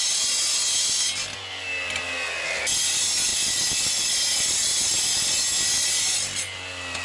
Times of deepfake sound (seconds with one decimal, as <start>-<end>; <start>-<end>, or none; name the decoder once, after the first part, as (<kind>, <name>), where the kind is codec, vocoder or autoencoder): 3.3-4.1 (vocoder, BigVGAN v2)